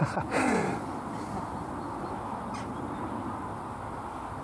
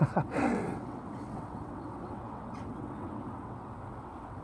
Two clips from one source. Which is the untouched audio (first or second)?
first